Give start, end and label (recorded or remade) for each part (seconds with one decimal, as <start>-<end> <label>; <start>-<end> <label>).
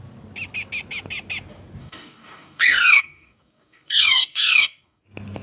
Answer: 0.0-1.8 recorded; 1.8-5.0 remade; 5.0-5.4 recorded